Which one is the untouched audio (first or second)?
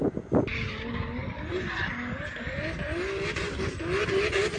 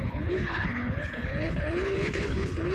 first